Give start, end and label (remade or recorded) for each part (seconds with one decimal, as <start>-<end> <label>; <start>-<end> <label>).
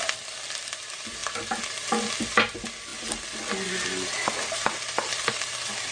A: 0.0-5.9 recorded